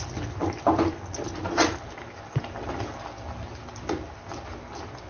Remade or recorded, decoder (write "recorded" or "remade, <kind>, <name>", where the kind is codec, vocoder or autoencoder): recorded